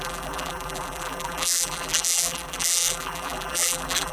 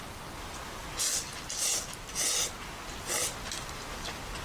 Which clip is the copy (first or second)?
first